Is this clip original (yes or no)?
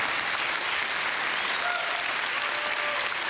yes